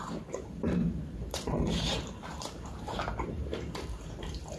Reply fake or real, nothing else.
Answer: fake